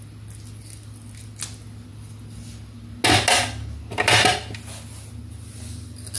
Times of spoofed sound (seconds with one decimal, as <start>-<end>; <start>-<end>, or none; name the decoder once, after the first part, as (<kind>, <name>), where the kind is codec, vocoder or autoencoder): none